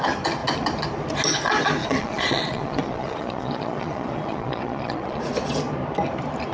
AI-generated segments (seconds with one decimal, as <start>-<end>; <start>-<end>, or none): 1.8-5.2